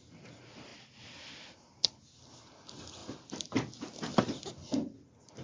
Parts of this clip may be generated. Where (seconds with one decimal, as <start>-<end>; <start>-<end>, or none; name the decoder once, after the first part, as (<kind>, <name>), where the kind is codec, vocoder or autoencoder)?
none